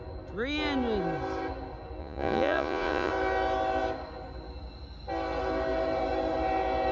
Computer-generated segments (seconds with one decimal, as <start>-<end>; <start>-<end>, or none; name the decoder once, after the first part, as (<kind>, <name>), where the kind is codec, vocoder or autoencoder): 2.0-3.1 (vocoder, Vocos)